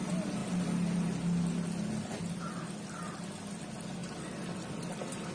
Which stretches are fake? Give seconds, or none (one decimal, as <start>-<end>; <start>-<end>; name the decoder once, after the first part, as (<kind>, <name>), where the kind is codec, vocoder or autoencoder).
none